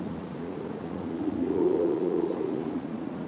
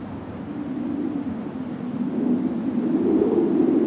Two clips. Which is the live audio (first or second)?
second